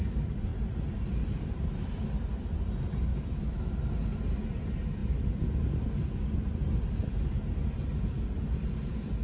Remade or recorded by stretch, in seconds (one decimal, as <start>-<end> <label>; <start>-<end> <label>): 0.0-3.1 recorded; 3.1-3.7 remade; 3.7-9.2 recorded